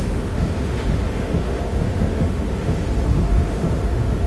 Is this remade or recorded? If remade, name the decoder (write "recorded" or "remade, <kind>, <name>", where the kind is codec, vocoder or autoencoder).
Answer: remade, autoencoder, DAC-VAE